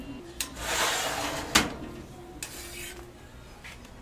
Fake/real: real